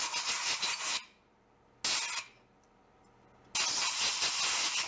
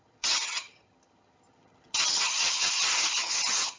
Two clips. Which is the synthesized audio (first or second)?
second